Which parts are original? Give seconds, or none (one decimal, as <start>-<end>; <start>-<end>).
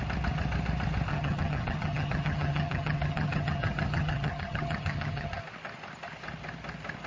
0.0-1.1; 5.4-7.1